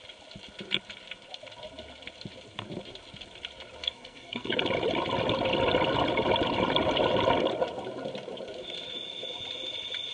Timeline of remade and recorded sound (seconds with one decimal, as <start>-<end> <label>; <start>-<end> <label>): 0.0-3.8 recorded; 3.8-4.6 remade; 4.6-10.1 recorded